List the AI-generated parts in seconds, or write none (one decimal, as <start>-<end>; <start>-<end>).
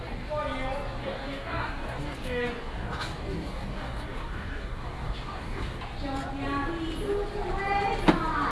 1.0-5.8